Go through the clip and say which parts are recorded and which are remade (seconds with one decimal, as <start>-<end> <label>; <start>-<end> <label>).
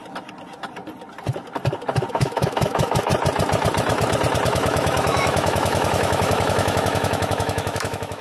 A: 0.0-2.1 recorded; 2.1-3.1 remade; 3.1-4.5 recorded; 4.5-8.2 remade